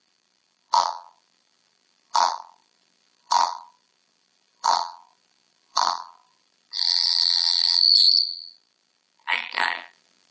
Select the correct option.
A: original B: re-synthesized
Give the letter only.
B